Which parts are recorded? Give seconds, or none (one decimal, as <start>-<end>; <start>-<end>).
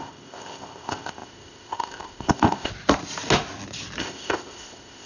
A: 2.7-4.0